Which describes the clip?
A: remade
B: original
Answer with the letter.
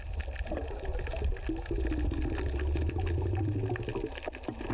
B